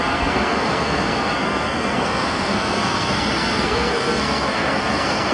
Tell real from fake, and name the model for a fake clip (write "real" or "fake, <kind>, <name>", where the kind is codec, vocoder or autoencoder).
fake, codec, SNAC